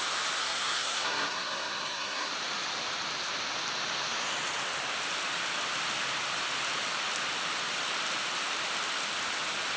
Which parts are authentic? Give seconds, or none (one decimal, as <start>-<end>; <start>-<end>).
0.0-0.4; 2.3-9.8